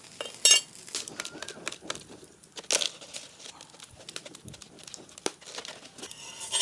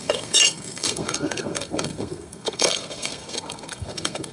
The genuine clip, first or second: first